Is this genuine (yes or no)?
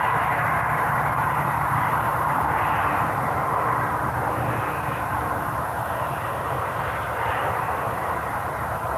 no